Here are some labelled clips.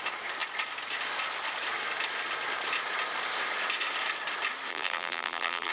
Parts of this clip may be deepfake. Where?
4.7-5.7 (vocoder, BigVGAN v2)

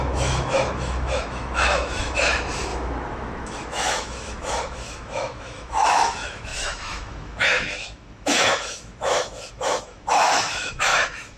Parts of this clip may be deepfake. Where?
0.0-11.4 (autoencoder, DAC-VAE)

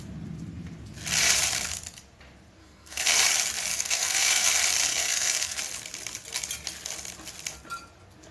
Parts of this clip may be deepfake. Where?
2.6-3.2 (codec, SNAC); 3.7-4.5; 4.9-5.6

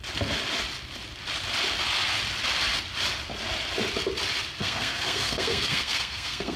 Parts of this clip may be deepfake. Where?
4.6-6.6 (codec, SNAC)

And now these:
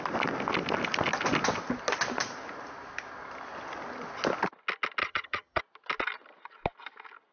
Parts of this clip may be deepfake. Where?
5.0-5.6 (vocoder, HiFi-GAN)

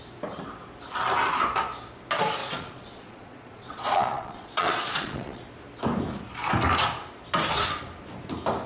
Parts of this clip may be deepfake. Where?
2.4-5.4 (vocoder, Vocos)